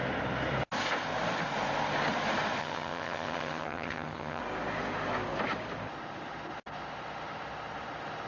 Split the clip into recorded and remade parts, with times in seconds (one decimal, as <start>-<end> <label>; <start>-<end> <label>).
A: 0.0-2.6 recorded; 2.6-4.4 remade; 4.4-8.3 recorded